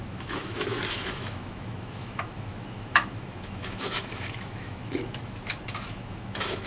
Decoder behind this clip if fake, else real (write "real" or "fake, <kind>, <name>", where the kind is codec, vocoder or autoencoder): fake, autoencoder, DAC-VAE